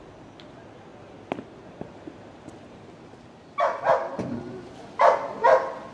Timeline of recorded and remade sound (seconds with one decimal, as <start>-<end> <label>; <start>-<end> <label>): 0.0-5.9 recorded